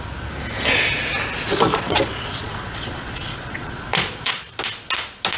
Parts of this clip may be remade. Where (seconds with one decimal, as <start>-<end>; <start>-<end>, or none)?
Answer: 1.7-4.6